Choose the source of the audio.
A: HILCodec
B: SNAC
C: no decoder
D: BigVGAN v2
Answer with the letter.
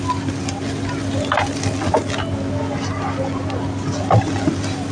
C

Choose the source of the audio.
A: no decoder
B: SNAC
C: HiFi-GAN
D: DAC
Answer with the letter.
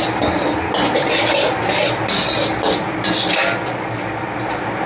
A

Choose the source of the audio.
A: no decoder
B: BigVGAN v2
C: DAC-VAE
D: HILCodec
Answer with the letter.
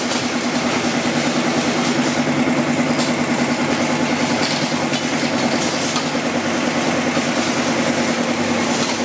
A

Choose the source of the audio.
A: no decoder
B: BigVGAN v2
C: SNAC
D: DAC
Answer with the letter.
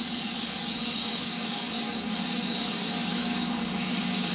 D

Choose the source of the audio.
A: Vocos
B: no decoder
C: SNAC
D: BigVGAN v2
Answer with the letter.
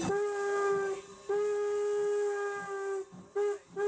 B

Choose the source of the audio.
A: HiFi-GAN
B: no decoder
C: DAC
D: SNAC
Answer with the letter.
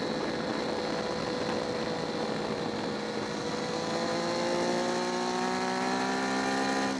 B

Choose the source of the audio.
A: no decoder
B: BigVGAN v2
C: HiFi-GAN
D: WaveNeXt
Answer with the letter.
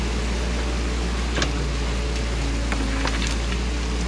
A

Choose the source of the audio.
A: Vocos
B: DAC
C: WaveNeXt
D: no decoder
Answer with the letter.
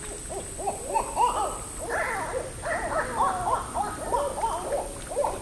D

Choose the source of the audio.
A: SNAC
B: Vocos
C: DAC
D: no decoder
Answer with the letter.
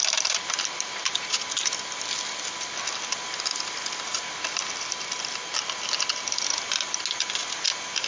D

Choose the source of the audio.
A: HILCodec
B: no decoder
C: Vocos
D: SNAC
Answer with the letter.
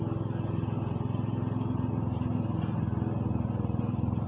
B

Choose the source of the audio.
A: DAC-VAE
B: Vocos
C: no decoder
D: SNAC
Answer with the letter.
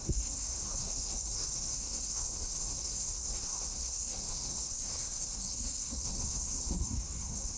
D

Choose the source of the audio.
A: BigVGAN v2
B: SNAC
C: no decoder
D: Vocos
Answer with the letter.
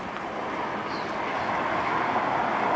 C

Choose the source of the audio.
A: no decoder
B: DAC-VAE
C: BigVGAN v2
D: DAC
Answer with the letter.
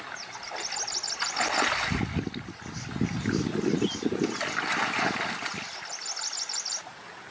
A